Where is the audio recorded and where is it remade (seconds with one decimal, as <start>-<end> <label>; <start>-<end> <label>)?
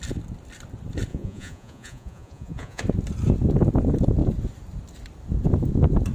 0.0-1.1 recorded; 1.1-2.8 remade; 2.8-6.1 recorded